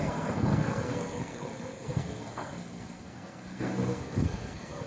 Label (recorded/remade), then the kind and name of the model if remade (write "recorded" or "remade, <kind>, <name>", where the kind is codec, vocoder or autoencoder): remade, codec, SNAC